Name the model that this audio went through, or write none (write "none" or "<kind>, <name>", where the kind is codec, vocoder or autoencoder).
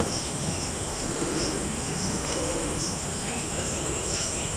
autoencoder, DAC-VAE